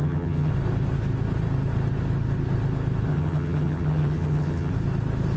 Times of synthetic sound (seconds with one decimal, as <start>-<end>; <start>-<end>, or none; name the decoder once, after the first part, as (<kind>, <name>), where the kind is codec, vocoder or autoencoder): 0.0-0.5 (vocoder, HiFi-GAN); 3.1-4.7